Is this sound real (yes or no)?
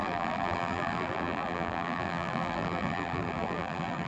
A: no